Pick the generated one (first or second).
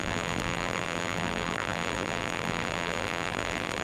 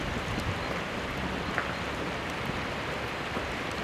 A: first